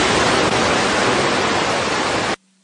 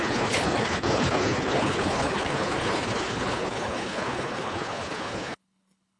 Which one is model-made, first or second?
second